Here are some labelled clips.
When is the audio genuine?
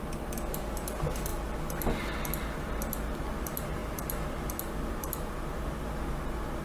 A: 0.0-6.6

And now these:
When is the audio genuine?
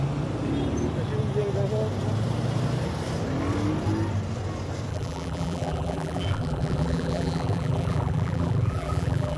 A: 0.0-4.9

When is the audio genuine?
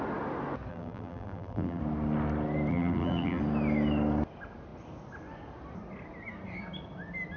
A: 0.0-0.7; 1.8-2.7; 3.4-7.4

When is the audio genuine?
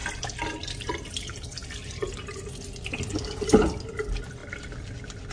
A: 0.0-1.1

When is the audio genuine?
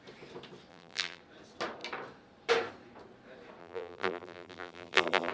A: 0.0-0.7; 1.2-3.6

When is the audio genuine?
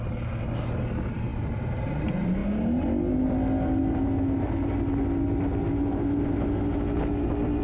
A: 0.0-1.3; 2.0-7.6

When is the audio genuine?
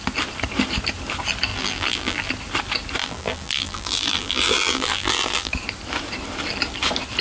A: 0.0-1.5; 2.3-3.0; 5.5-7.2